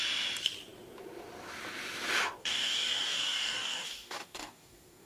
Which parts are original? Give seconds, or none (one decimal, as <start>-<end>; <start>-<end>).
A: 0.0-2.4